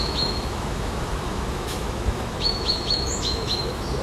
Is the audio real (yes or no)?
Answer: no